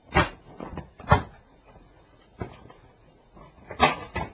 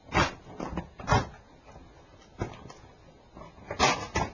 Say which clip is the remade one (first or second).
first